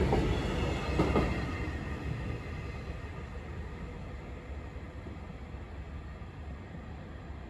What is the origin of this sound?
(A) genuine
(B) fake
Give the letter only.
A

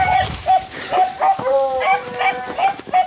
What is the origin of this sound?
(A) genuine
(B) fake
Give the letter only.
A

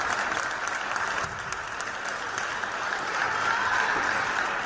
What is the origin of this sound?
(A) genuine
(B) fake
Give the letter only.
B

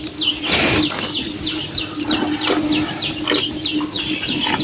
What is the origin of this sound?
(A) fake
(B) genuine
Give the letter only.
B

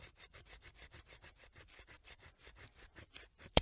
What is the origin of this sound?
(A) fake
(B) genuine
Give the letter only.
A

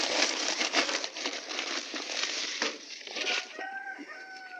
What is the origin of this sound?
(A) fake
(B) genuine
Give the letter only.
A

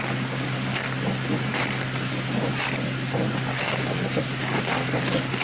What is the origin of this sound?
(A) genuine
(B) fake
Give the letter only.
A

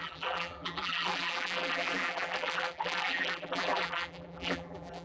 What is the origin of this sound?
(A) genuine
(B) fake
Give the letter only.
B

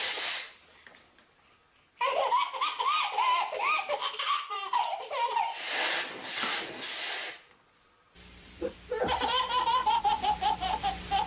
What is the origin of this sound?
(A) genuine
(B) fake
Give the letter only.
B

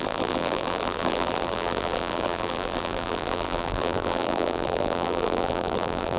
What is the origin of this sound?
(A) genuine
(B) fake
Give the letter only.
B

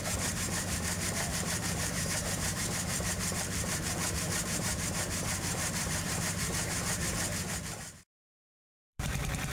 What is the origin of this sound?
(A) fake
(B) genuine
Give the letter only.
A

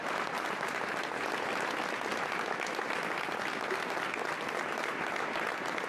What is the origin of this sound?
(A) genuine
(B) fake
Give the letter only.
A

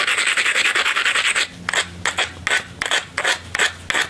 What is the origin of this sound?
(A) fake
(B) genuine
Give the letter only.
B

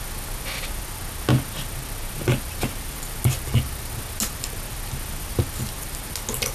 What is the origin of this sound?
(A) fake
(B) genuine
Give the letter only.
B